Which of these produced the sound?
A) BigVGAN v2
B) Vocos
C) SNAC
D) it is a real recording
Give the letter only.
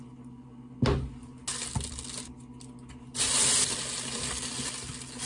D